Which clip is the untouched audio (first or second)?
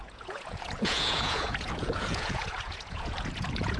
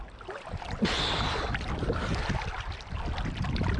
second